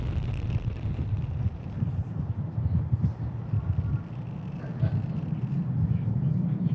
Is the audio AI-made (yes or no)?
no